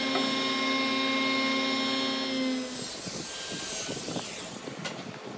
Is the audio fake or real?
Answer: real